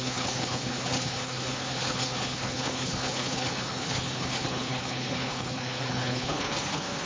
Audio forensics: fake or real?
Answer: fake